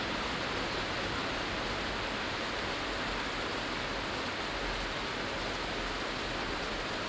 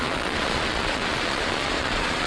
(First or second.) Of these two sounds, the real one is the first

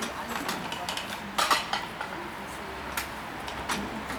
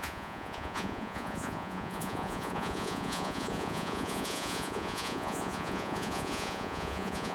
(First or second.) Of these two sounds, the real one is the first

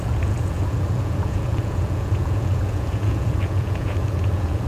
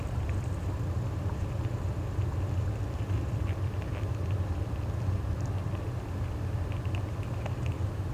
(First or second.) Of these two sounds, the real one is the second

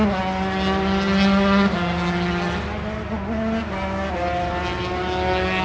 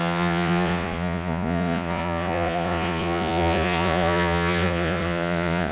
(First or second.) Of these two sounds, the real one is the first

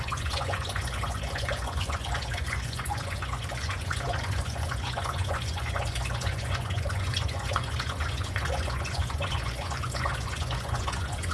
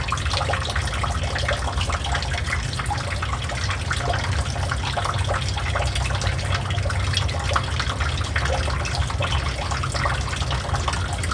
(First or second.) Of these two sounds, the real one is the second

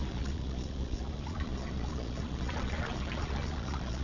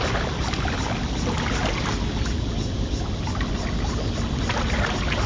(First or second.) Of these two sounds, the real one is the second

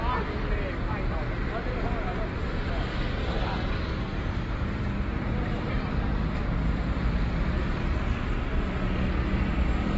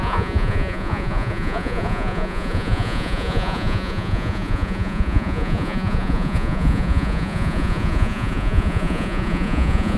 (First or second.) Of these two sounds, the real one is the first